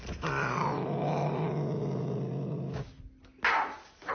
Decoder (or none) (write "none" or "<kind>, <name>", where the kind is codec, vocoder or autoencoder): none